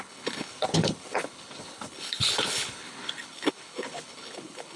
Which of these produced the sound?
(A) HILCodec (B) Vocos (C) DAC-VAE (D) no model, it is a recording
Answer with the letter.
A